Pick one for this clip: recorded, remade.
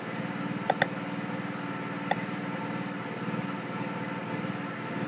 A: recorded